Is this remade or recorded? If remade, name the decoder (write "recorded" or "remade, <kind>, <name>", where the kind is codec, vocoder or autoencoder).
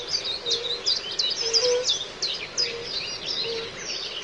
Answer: recorded